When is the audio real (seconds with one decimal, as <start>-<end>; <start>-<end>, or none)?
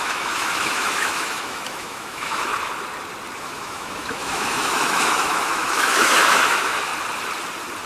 2.5-3.4; 6.9-7.9